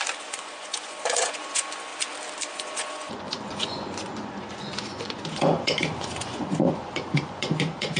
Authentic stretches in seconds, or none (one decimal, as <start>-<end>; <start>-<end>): 1.9-2.5